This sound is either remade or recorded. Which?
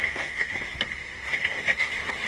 remade